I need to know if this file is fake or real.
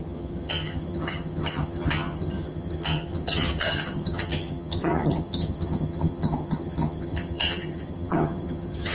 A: fake